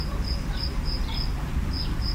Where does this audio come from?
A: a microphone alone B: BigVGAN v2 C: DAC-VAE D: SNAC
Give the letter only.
A